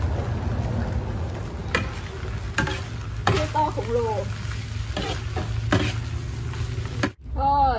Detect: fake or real real